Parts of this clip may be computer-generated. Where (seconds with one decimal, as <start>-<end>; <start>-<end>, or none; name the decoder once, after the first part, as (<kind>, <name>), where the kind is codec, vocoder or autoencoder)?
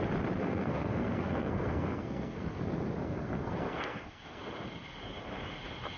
0.4-2.6 (codec, SNAC); 3.0-4.4